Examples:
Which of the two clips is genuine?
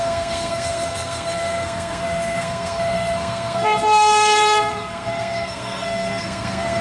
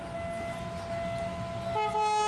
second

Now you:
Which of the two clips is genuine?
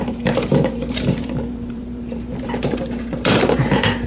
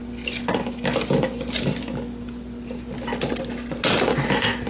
second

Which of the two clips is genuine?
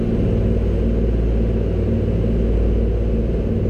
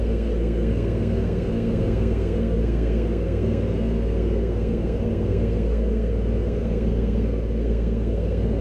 first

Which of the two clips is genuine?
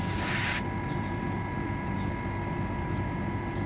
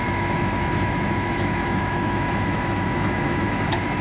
first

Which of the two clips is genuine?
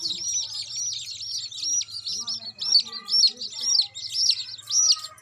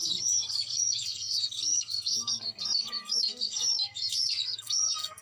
first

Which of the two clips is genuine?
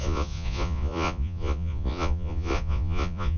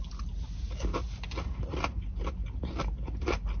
second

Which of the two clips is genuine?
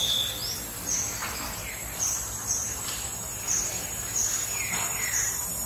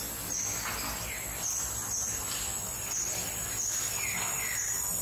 second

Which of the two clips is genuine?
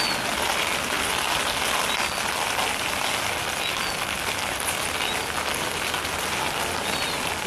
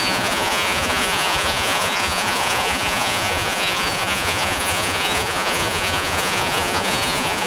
first